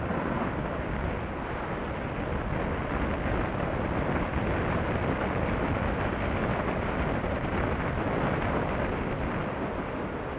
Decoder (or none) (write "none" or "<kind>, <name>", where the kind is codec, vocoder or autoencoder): none